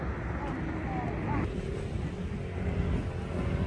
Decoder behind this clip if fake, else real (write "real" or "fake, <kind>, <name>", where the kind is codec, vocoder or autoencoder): real